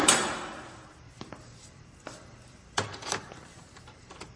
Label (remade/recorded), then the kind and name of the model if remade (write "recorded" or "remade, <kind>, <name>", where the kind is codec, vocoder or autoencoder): remade, vocoder, BigVGAN v2